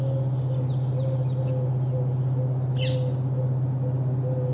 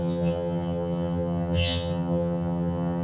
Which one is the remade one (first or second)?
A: second